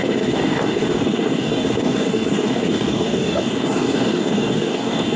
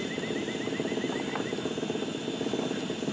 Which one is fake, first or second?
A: first